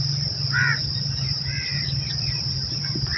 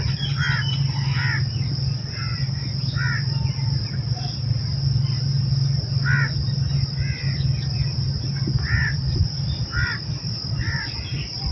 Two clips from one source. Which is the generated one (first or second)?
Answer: first